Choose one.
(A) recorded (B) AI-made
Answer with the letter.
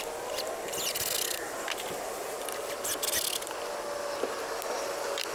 A